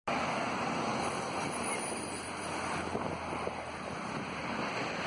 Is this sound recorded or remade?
recorded